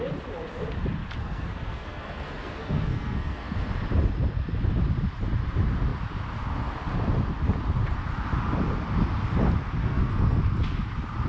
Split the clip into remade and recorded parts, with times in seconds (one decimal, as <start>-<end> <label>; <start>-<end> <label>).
0.0-1.2 recorded; 1.2-3.7 remade; 3.7-9.8 recorded; 9.8-10.4 remade; 10.4-11.3 recorded